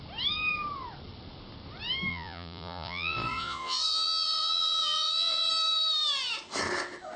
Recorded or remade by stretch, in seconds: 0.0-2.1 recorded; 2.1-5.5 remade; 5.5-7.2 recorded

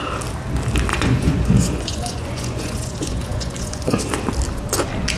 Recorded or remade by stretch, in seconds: 0.0-0.9 recorded; 0.9-4.0 remade; 4.0-5.2 recorded

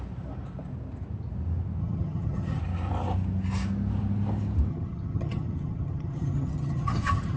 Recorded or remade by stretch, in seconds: 0.0-1.8 recorded; 1.8-2.6 remade; 2.6-4.7 recorded; 4.7-7.4 remade